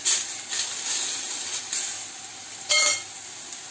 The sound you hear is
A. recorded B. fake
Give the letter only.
A